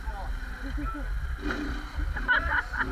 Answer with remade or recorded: recorded